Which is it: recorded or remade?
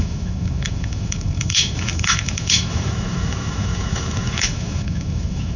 remade